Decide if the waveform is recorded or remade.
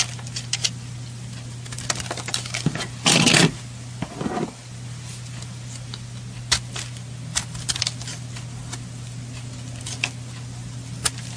recorded